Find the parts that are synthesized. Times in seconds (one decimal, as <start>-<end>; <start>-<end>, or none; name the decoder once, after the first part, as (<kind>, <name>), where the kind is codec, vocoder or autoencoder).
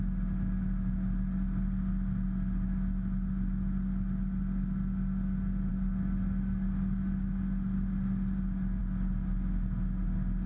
none